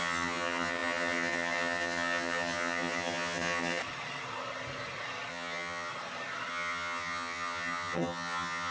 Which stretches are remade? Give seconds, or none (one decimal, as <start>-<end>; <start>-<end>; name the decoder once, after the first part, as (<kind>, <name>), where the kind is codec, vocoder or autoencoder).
0.0-3.8 (vocoder, HiFi-GAN); 5.3-5.9; 6.5-8.7

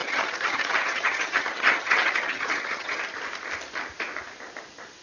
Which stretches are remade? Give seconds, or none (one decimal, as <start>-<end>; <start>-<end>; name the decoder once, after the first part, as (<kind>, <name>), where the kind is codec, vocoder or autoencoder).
0.0-3.0 (vocoder, HiFi-GAN)

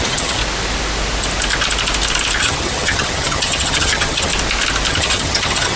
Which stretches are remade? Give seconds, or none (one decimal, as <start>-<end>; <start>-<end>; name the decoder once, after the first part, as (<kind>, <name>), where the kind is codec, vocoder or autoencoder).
0.0-0.4 (vocoder, HiFi-GAN); 2.4-4.3; 4.9-5.8

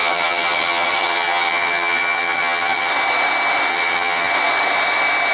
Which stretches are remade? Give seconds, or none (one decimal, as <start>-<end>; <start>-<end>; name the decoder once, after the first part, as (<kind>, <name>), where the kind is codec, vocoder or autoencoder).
0.0-2.9 (vocoder, HiFi-GAN); 3.7-4.3

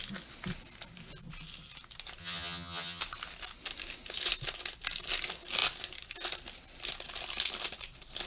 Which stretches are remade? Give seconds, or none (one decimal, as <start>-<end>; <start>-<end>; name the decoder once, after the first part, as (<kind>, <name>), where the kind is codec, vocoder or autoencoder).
2.2-3.0 (vocoder, HiFi-GAN)

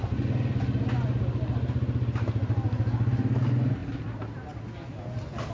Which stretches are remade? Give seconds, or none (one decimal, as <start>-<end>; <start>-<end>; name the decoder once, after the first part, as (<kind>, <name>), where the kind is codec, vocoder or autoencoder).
none

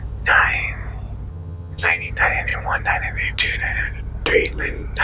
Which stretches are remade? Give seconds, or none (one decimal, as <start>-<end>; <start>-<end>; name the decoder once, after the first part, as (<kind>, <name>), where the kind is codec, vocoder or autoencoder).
1.3-2.1 (vocoder, HiFi-GAN)

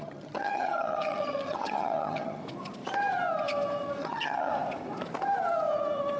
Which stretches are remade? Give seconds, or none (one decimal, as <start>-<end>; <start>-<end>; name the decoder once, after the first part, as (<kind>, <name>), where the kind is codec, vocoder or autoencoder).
0.0-2.4 (vocoder, HiFi-GAN); 4.0-4.5